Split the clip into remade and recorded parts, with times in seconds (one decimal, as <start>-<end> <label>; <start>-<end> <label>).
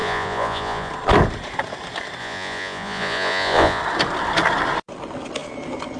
0.0-0.9 remade; 0.9-2.2 recorded; 2.2-3.8 remade; 3.8-6.0 recorded